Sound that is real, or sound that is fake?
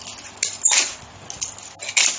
real